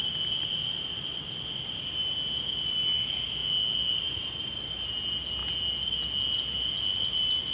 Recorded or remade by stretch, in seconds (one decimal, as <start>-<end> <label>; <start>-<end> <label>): 0.0-7.5 recorded

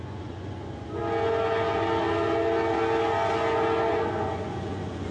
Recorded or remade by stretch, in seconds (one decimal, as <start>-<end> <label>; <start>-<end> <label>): 0.0-1.0 remade; 1.0-3.9 recorded; 3.9-5.1 remade